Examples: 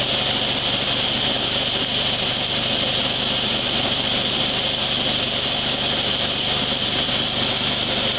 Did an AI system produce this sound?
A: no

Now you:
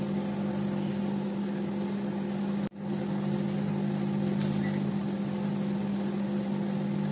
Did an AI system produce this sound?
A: no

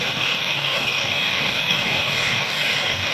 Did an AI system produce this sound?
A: yes